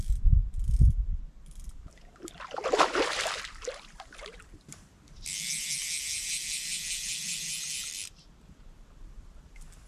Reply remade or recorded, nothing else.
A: remade